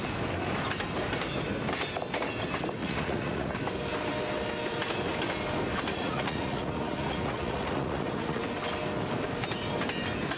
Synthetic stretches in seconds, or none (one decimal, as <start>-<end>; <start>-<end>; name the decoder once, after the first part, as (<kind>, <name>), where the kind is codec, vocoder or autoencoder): 2.8-3.5 (vocoder, Vocos); 5.9-8.4